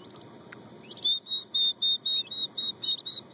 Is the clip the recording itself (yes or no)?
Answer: yes